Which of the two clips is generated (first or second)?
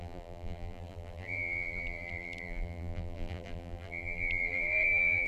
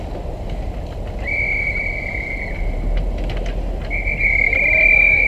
first